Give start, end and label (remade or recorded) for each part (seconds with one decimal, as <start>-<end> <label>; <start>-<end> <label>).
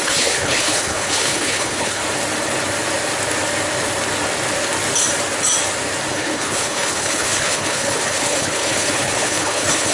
0.0-2.0 remade; 2.0-6.1 recorded; 6.1-9.9 remade